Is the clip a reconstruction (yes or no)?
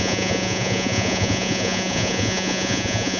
yes